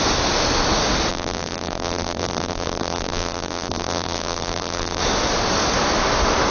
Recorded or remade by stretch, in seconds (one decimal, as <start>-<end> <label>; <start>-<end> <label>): 0.0-1.1 recorded; 1.1-5.0 remade; 5.0-6.5 recorded